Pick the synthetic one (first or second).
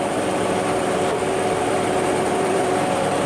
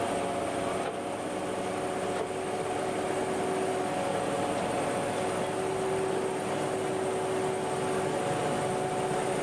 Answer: first